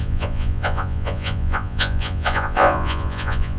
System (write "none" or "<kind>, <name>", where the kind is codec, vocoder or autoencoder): vocoder, Vocos